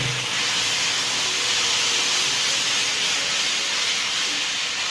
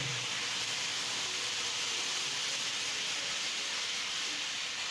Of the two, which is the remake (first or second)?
second